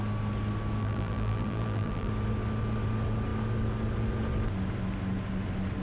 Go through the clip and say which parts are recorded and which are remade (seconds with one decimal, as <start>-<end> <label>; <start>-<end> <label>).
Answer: 0.0-0.8 recorded; 0.8-2.1 remade; 2.1-5.8 recorded